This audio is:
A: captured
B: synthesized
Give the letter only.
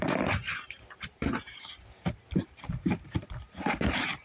B